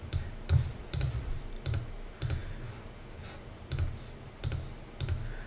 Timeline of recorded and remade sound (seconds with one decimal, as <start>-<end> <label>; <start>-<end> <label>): 0.0-0.7 recorded; 0.7-1.3 remade; 1.3-5.5 recorded